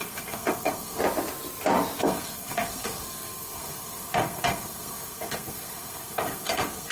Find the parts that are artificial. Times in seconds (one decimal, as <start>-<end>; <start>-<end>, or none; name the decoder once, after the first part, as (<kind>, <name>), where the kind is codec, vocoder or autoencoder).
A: 0.0-1.0 (codec, SNAC); 2.0-6.9